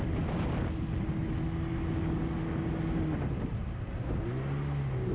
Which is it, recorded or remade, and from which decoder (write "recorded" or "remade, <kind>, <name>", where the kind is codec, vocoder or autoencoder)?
recorded